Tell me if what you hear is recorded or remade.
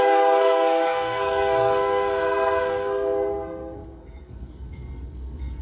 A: remade